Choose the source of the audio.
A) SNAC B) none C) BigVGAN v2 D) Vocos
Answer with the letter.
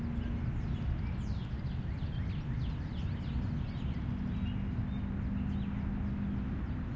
B